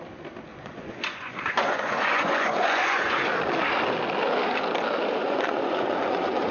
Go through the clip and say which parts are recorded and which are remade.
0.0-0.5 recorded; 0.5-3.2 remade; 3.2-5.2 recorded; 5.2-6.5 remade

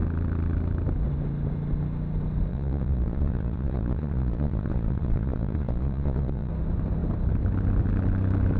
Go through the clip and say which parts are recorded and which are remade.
0.0-2.5 recorded; 2.5-6.5 remade; 6.5-8.6 recorded

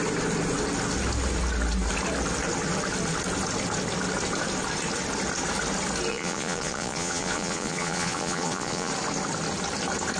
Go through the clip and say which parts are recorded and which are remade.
0.0-6.1 recorded; 6.1-8.9 remade; 8.9-10.2 recorded